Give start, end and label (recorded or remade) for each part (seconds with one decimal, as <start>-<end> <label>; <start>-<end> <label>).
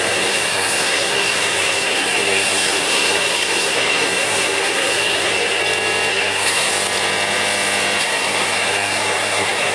0.0-5.6 remade; 5.6-6.1 recorded; 6.1-6.7 remade; 6.7-8.0 recorded; 8.0-9.7 remade